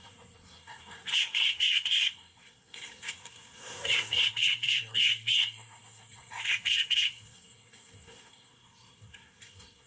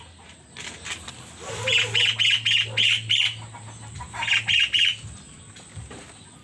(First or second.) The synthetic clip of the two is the first